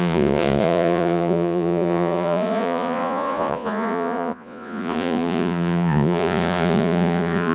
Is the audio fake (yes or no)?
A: yes